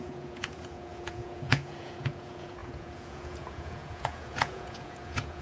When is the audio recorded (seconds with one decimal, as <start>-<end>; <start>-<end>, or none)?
none